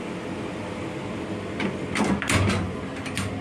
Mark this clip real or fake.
real